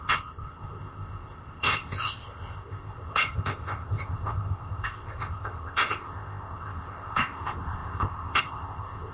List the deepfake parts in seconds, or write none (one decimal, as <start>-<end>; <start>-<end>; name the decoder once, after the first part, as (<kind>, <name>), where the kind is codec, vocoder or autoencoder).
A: 0.0-9.1 (codec, ZipCodec)